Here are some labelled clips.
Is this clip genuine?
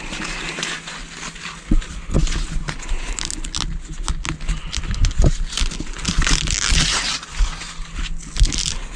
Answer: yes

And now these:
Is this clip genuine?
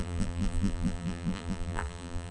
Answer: no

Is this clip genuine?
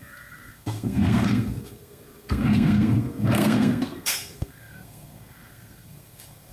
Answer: no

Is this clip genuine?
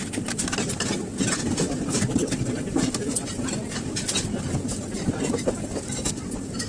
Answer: yes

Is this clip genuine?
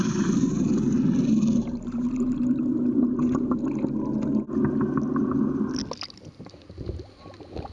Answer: yes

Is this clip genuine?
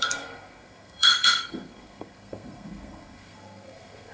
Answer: no